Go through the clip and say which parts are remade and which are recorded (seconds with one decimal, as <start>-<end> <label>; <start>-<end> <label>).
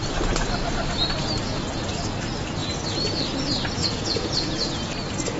0.0-3.8 recorded; 3.8-4.6 remade; 4.6-5.4 recorded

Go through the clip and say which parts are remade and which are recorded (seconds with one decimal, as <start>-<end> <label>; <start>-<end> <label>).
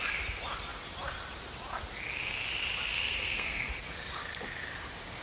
0.0-2.9 recorded; 2.9-3.7 remade; 3.7-5.2 recorded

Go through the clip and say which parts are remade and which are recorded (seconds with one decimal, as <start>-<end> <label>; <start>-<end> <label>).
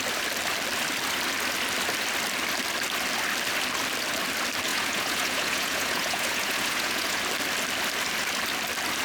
0.0-4.7 recorded; 4.7-7.2 remade; 7.2-9.0 recorded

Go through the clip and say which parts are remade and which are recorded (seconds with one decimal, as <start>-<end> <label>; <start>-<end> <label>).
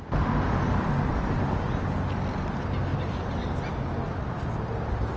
0.0-2.9 recorded; 2.9-3.7 remade; 3.7-5.2 recorded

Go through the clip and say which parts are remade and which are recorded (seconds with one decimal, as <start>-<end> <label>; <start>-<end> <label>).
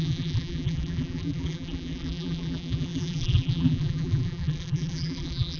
0.0-5.6 remade